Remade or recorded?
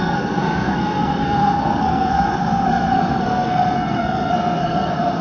remade